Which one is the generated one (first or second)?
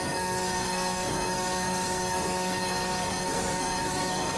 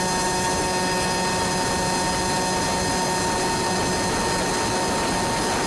first